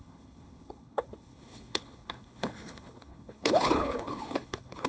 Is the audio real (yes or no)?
no